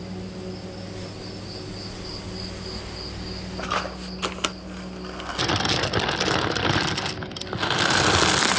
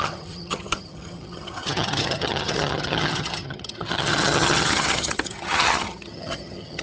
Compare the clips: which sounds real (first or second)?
first